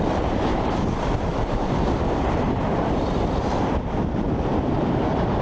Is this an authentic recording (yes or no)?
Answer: no